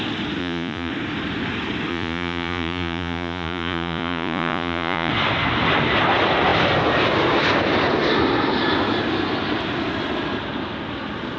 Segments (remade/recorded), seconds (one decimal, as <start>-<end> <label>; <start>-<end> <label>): 0.0-0.4 recorded; 0.4-0.9 remade; 0.9-1.9 recorded; 1.9-5.1 remade; 5.1-11.4 recorded